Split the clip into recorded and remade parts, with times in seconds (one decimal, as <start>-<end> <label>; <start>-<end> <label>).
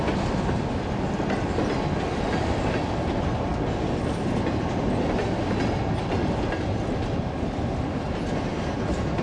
0.0-9.2 recorded